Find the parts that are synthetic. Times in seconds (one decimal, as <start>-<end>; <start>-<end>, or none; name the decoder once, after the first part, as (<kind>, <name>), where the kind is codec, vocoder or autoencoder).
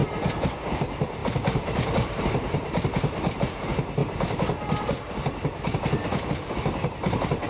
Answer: 0.0-0.7 (vocoder, BigVGAN v2); 1.2-3.4; 4.0-6.3